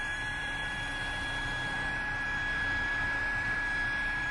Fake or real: fake